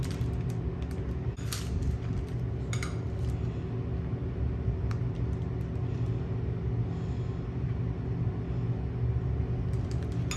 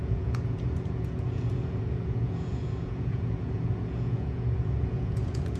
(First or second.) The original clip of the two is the first